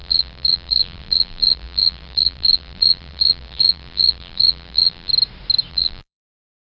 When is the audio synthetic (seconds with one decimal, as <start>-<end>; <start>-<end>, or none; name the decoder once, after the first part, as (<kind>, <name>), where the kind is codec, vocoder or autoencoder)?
0.0-5.1 (vocoder, BigVGAN v2); 5.7-6.7